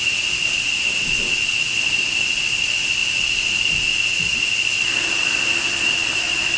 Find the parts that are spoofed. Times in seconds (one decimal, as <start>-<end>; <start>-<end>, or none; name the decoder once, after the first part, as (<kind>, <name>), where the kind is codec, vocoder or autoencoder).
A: none